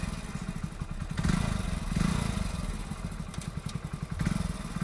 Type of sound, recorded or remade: recorded